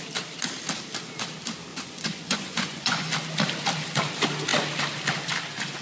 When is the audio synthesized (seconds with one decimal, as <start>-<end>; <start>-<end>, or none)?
1.7-3.1